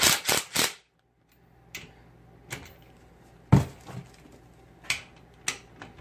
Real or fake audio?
real